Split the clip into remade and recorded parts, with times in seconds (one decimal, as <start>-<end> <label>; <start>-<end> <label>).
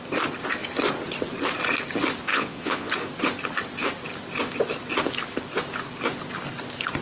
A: 0.0-2.3 recorded; 2.3-2.9 remade; 2.9-7.0 recorded